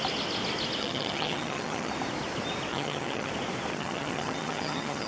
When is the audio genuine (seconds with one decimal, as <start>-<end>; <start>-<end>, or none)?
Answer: 0.0-0.8; 1.9-2.7; 3.3-3.7